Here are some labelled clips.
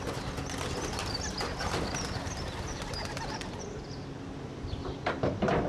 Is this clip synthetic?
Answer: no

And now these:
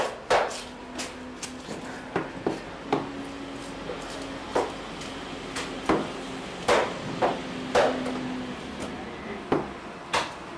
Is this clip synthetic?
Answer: no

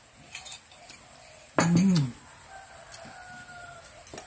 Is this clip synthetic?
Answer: no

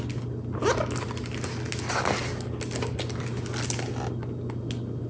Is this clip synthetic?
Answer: no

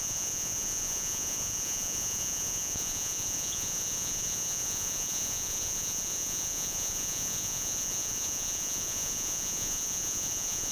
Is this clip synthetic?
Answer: yes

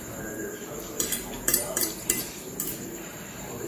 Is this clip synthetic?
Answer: yes